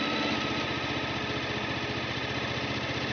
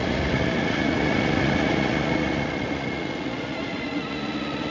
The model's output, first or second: second